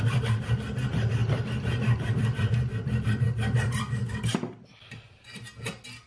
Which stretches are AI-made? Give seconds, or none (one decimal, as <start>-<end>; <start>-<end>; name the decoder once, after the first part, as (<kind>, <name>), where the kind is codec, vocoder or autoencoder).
1.2-4.9 (vocoder, BigVGAN v2)